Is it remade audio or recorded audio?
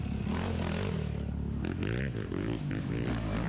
recorded